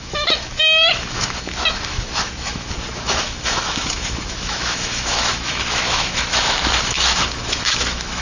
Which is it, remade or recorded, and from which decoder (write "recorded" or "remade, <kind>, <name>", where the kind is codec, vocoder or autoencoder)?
remade, autoencoder, DAC-VAE